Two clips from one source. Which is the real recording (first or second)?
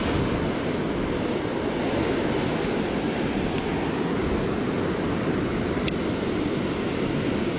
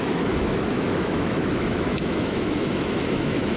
first